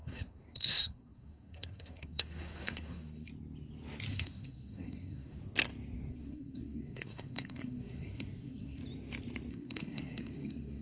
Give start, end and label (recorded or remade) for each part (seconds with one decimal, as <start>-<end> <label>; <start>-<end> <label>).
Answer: 0.0-3.3 remade; 3.3-4.1 recorded; 4.1-5.4 remade; 5.4-6.1 recorded; 6.1-8.8 remade; 8.8-9.5 recorded; 9.5-10.8 remade